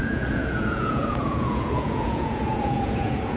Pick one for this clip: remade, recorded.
remade